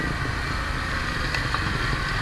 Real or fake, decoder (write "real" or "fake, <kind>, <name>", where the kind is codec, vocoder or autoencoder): real